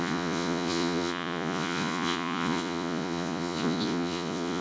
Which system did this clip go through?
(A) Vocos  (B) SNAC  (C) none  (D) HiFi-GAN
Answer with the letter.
A